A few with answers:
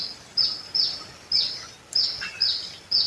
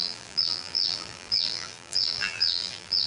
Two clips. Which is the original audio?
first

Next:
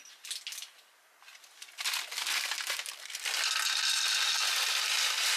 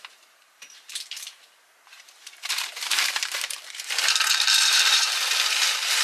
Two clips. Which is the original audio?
first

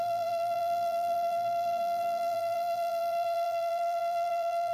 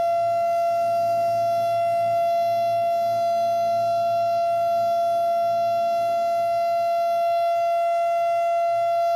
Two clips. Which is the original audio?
second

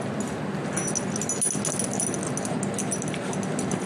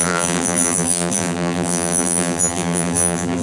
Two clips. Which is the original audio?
first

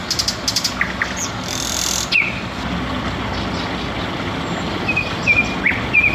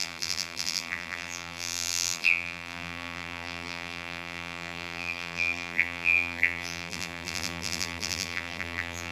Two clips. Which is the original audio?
first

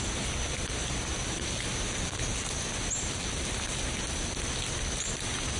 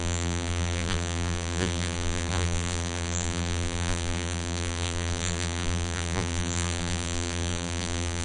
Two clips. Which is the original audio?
first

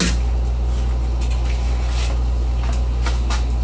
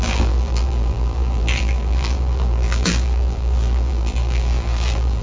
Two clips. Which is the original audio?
first